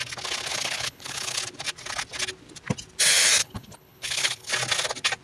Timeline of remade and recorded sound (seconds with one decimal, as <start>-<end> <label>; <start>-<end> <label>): 0.0-0.5 recorded; 0.5-1.4 remade; 1.4-3.4 recorded; 3.4-4.5 remade; 4.5-5.2 recorded